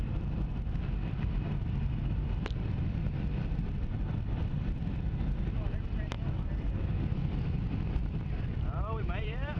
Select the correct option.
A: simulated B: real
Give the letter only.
A